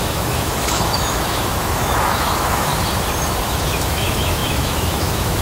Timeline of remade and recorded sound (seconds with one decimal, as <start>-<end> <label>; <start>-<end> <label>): 0.0-2.7 remade; 2.7-3.4 recorded; 3.4-5.4 remade